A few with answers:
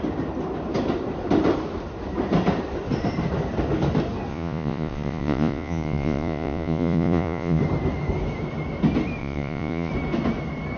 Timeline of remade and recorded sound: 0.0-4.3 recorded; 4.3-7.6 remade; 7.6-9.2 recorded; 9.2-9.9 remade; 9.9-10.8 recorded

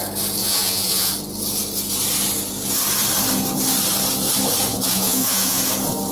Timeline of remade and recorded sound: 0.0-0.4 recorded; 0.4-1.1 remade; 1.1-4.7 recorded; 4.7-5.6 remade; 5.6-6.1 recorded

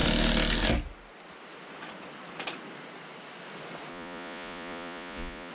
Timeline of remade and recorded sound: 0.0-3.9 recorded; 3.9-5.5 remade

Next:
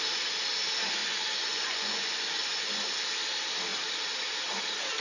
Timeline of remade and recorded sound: 0.0-1.0 recorded; 1.0-2.9 remade; 2.9-5.0 recorded

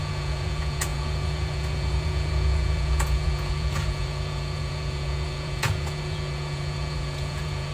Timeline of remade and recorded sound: 0.0-7.7 remade